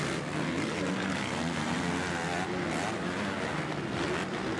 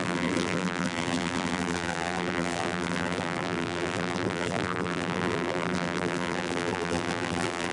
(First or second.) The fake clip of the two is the second